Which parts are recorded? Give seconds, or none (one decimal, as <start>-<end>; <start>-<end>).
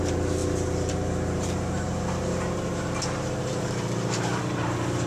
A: none